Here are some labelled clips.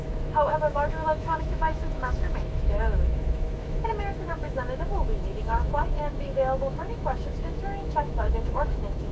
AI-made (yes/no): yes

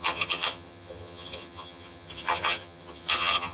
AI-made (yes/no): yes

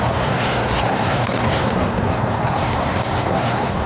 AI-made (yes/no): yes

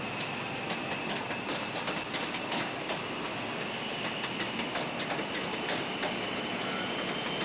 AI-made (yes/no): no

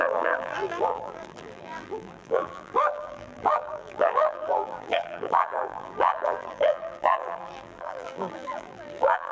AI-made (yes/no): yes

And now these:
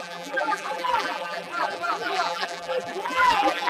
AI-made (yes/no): yes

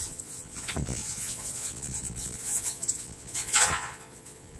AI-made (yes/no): yes